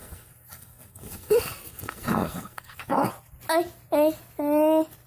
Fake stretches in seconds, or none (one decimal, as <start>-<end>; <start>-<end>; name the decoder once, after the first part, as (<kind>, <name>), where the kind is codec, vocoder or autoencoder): 0.0-3.1 (codec, SNAC)